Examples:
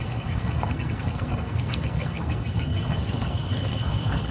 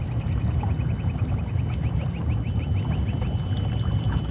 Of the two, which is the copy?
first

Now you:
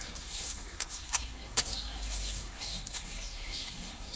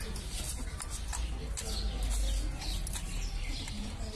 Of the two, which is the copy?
first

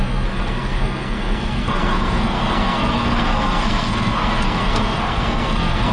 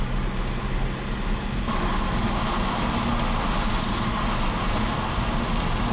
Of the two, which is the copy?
first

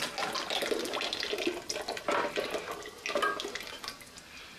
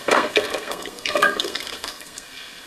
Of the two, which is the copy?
second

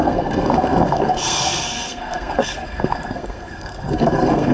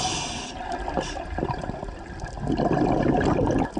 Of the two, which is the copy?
first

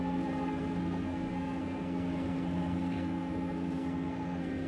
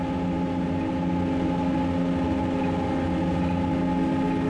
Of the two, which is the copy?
first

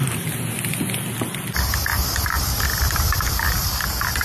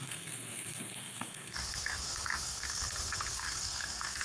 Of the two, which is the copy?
second